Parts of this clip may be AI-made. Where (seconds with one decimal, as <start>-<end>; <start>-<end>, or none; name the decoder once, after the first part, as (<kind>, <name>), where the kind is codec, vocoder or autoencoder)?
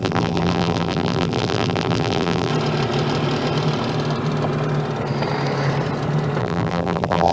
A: 0.0-2.5 (vocoder, BigVGAN v2); 6.4-7.3